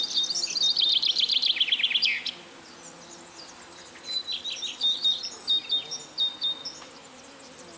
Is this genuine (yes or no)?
yes